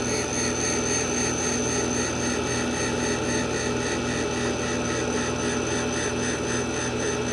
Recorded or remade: recorded